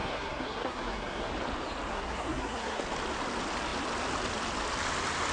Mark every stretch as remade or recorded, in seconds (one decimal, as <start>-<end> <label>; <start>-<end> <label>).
0.0-1.3 remade; 1.3-1.9 recorded; 1.9-2.8 remade; 2.8-5.3 recorded